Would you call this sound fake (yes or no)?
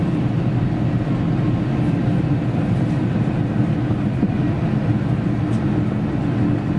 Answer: no